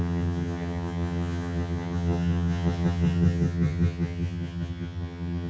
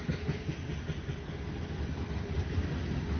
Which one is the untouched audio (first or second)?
second